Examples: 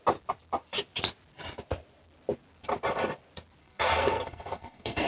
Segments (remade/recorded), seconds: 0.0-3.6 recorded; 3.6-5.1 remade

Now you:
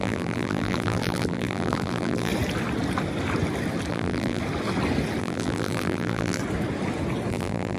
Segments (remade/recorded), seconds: 0.0-2.3 remade; 2.3-3.9 recorded; 3.9-4.4 remade; 4.4-5.2 recorded; 5.2-6.4 remade; 6.4-7.3 recorded; 7.3-7.8 remade